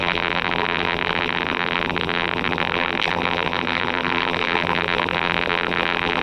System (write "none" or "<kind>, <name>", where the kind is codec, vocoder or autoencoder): vocoder, BigVGAN v2